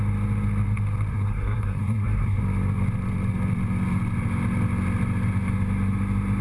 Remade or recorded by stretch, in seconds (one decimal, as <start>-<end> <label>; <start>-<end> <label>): 0.0-1.1 recorded; 1.1-2.4 remade; 2.4-6.4 recorded